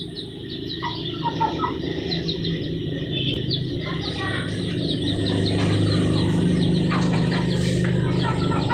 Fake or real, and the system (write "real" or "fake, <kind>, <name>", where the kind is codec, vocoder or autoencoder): real